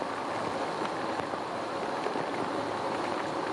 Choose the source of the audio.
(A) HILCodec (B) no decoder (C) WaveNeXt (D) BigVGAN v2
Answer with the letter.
B